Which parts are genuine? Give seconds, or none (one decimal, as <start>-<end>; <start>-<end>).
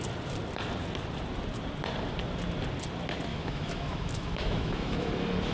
0.0-3.3; 5.1-5.5